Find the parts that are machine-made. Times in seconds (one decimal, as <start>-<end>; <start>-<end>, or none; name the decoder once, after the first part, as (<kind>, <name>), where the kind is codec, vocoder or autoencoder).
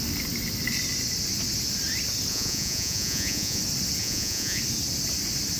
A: 2.3-3.6 (vocoder, Vocos); 4.0-4.6